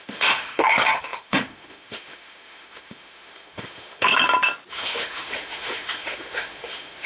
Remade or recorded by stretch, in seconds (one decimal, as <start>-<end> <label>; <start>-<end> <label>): 0.0-4.1 remade; 4.1-4.7 recorded; 4.7-7.1 remade